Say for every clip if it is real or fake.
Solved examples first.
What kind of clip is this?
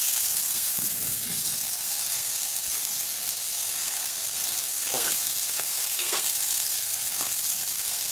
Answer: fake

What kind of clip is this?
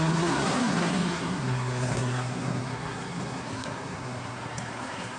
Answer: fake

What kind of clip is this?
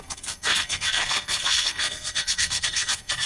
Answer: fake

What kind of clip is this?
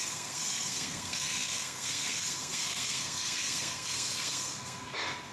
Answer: fake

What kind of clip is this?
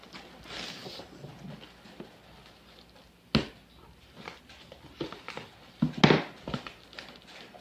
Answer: real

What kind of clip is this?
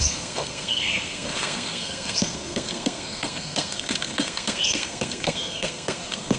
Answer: fake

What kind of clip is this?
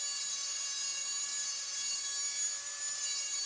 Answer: real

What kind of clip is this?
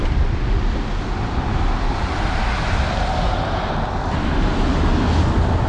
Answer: real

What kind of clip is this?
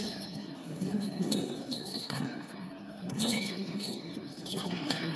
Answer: fake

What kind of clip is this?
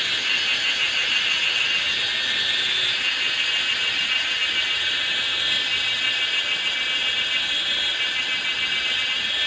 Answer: real